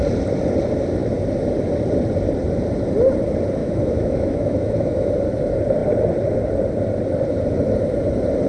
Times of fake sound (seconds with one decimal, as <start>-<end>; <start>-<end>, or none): 3.6-5.1